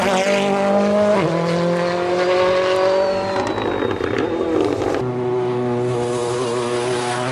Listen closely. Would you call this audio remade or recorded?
recorded